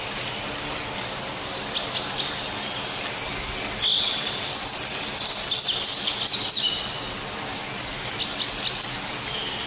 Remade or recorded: recorded